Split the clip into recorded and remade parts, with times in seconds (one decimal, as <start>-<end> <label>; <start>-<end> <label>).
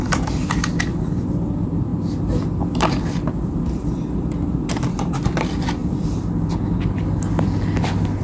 0.0-5.8 recorded; 5.8-6.3 remade; 6.3-8.2 recorded